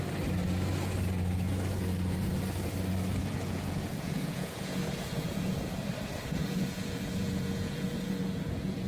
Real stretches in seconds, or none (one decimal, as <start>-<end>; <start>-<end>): 0.0-3.2; 5.7-6.4